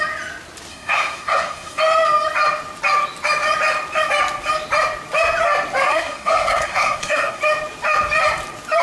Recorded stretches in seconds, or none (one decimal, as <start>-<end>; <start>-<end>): 0.0-0.7; 1.8-5.9; 7.4-8.8